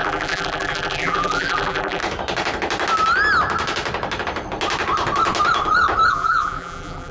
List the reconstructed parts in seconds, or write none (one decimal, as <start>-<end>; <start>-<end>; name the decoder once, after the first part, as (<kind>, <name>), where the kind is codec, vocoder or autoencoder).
0.0-2.0 (vocoder, BigVGAN v2); 6.1-7.1